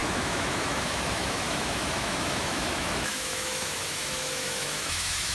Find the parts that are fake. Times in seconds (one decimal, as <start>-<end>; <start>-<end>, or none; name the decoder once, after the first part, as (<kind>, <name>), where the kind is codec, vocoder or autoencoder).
0.0-5.3 (autoencoder, DAC-VAE)